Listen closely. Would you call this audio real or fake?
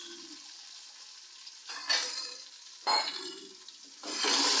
real